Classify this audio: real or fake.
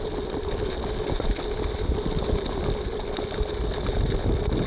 real